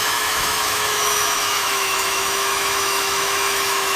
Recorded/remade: remade